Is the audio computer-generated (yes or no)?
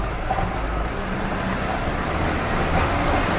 no